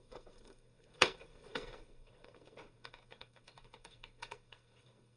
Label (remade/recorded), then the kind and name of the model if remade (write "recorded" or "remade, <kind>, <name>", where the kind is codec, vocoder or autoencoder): remade, codec, SNAC